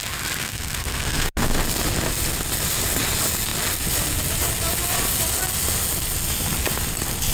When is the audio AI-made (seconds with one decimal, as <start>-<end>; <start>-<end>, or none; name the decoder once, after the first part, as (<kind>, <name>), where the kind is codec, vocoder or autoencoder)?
0.4-1.6 (codec, SNAC)